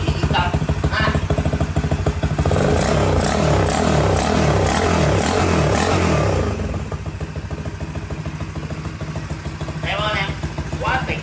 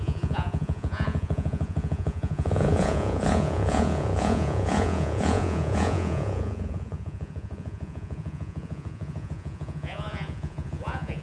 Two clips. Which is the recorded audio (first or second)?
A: first